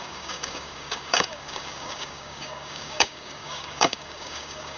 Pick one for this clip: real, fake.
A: fake